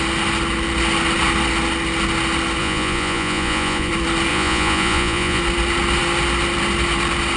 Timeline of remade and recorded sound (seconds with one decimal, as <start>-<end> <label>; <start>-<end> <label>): 0.0-2.6 recorded; 2.6-3.9 remade; 3.9-4.3 recorded; 4.3-5.4 remade; 5.4-7.4 recorded